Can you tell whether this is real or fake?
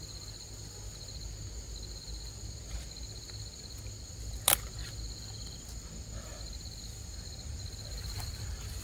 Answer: real